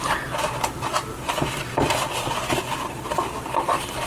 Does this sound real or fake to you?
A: fake